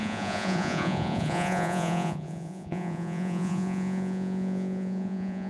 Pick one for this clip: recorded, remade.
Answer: remade